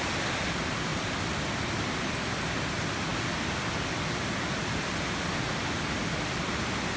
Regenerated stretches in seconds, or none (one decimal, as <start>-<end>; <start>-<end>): none